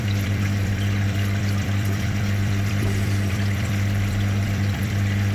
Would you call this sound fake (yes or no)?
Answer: yes